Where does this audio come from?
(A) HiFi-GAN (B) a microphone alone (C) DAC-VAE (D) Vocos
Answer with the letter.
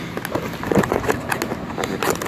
B